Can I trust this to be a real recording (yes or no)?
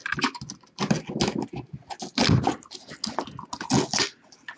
yes